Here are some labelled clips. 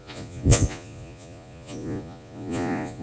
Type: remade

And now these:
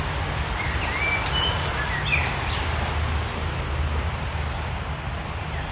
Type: recorded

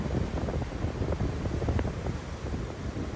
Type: recorded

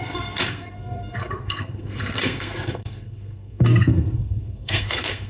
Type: remade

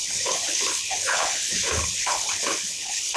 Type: remade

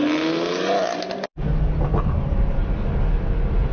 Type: recorded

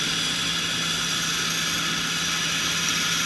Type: recorded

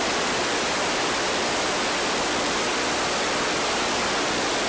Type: recorded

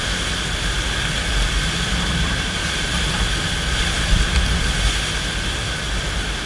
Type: recorded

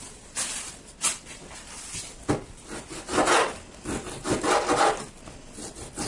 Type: recorded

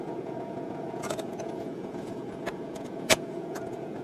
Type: remade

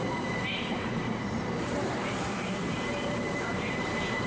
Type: remade